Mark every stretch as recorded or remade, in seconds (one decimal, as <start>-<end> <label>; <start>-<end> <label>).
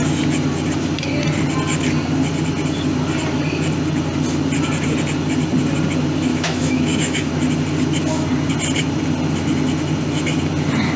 0.0-6.3 recorded; 6.3-7.3 remade; 7.3-11.0 recorded